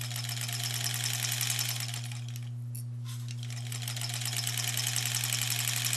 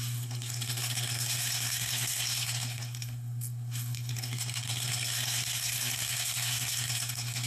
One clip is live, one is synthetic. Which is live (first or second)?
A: first